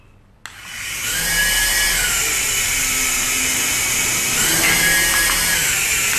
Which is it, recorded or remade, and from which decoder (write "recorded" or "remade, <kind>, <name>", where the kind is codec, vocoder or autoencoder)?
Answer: recorded